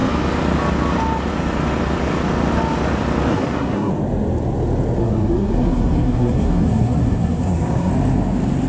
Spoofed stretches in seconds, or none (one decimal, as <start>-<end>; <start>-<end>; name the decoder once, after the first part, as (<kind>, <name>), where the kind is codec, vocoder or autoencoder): 3.3-3.9 (codec, SNAC); 5.0-7.9